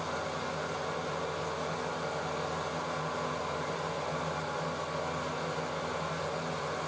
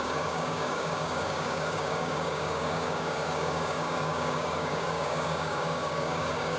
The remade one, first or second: second